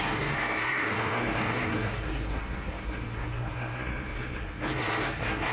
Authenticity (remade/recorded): remade